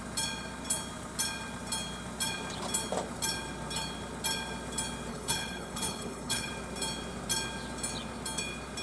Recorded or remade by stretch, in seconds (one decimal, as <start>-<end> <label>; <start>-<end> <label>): 0.0-5.1 recorded; 5.1-6.5 remade; 6.5-8.8 recorded